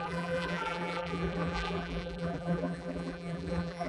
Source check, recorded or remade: remade